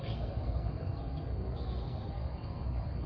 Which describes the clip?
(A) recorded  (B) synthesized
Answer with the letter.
B